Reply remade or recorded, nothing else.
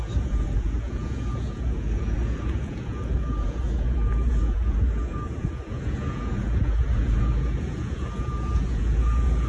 remade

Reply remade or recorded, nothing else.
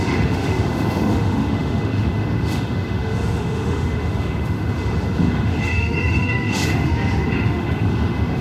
remade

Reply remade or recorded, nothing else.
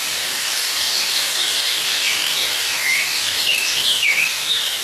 remade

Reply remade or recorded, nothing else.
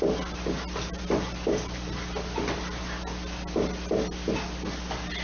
recorded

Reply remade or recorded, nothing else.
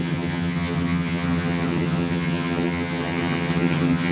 remade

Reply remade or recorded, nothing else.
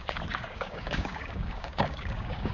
remade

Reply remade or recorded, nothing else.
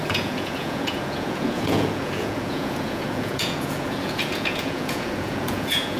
remade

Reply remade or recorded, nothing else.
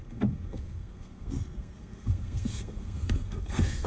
remade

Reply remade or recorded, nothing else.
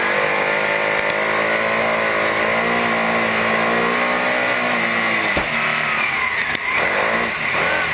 recorded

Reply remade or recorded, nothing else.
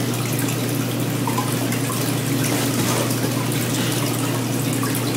recorded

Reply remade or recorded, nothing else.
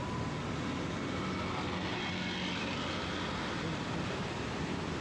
recorded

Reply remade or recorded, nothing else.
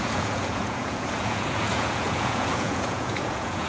remade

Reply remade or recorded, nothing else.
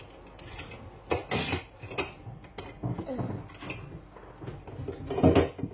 recorded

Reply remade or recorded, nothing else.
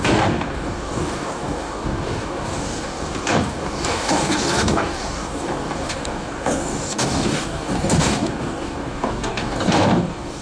remade